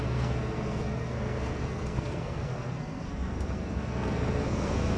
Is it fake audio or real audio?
fake